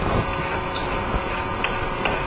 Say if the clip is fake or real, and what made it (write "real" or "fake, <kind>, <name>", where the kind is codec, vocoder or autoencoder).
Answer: real